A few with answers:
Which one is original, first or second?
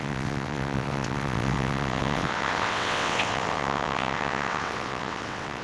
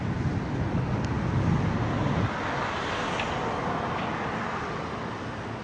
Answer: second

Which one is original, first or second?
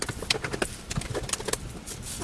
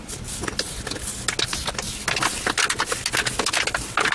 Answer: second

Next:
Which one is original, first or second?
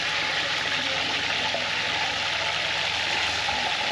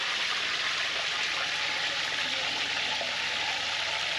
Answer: first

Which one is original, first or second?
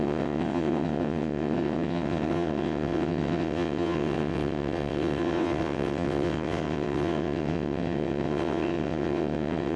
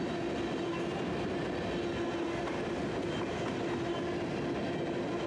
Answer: second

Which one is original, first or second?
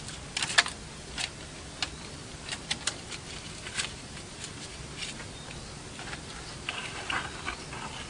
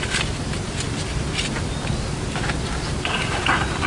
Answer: second